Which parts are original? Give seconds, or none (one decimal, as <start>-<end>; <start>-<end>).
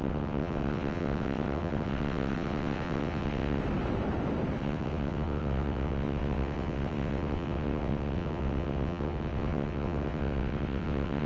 3.6-4.6